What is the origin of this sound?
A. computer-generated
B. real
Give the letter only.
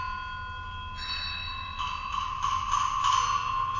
B